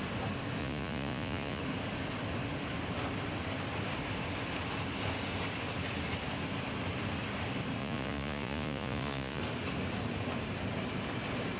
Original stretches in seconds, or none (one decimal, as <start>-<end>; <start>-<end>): 0.0-0.6; 1.6-7.8; 9.4-11.6